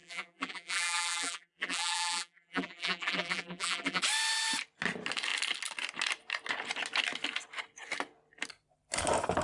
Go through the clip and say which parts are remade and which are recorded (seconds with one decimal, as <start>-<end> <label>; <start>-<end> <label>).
0.0-4.0 remade; 4.0-9.4 recorded